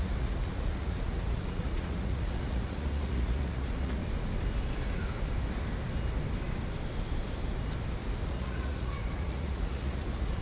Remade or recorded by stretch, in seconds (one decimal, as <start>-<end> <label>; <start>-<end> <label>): 0.0-4.0 remade; 4.0-8.3 recorded; 8.3-10.4 remade